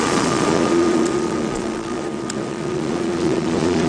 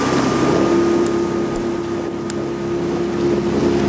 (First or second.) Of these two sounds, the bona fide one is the second